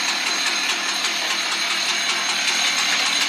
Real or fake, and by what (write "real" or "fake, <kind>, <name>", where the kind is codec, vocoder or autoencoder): real